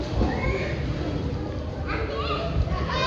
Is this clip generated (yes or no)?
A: no